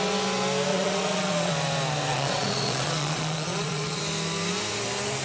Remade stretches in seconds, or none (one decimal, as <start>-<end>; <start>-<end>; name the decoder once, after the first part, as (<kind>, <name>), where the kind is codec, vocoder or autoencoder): 0.7-1.5 (vocoder, Vocos); 2.1-4.0